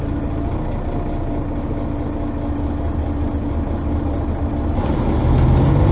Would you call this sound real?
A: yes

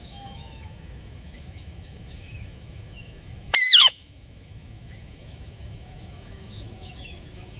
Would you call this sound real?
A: no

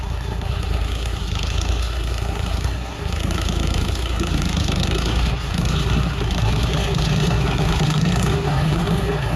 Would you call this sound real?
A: no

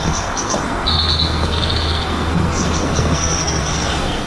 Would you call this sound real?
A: no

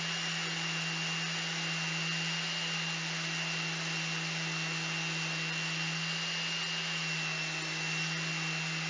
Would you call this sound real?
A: yes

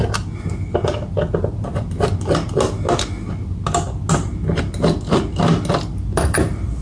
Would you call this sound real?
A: yes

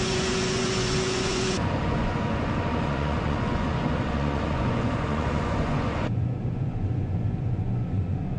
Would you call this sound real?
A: no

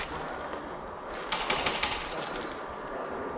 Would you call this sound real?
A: yes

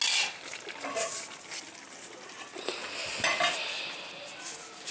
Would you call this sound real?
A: yes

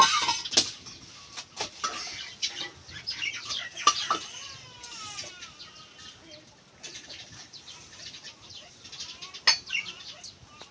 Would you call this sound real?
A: yes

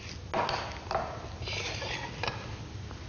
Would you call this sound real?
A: yes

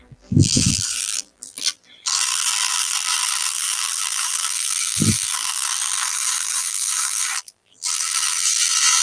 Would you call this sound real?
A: no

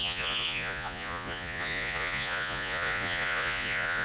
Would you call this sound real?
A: no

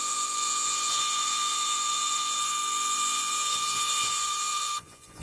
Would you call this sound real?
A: no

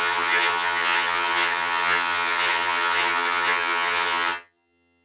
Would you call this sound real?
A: no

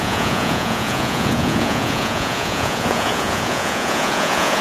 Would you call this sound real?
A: no